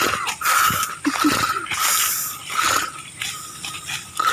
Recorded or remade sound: remade